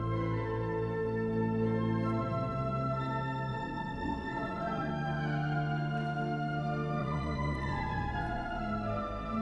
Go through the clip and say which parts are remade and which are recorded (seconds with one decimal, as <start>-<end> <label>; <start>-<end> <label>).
0.0-3.5 recorded; 3.5-4.9 remade; 4.9-7.0 recorded; 7.0-8.6 remade; 8.6-9.4 recorded